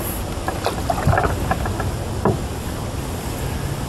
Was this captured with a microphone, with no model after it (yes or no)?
yes